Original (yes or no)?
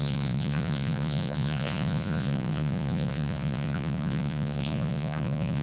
no